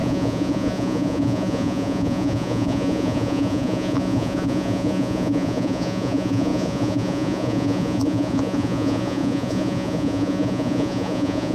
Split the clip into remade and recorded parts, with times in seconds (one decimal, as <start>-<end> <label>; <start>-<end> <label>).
0.0-11.5 remade